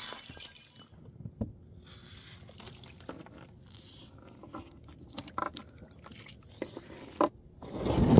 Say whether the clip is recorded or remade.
recorded